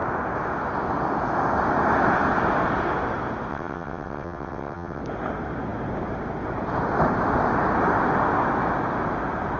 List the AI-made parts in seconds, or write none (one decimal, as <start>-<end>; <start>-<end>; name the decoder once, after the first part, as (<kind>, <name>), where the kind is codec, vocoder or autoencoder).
3.5-5.0 (vocoder, WaveNeXt)